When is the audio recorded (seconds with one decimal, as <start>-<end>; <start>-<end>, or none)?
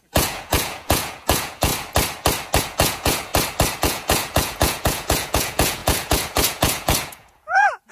1.7-2.6; 3.3-3.8